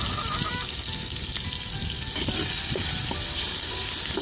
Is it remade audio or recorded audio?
recorded